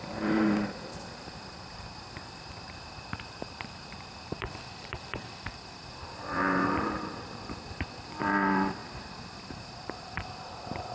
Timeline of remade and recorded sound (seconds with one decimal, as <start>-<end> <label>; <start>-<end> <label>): 0.0-8.8 remade; 8.8-9.4 recorded; 9.4-10.9 remade